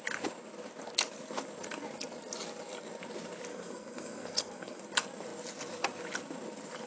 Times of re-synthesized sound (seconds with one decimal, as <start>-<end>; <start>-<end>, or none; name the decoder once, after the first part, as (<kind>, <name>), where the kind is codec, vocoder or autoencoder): 3.5-4.8 (codec, SNAC)